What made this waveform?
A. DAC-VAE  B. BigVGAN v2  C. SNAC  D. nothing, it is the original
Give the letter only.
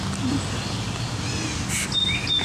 D